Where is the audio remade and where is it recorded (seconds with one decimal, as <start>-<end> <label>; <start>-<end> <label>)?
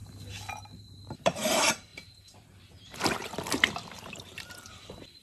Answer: 0.0-0.5 recorded; 0.5-5.2 remade